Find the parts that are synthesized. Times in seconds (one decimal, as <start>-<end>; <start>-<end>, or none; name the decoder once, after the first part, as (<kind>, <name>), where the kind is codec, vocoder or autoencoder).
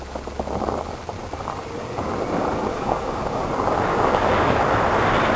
2.7-3.5 (codec, DAC); 3.9-4.6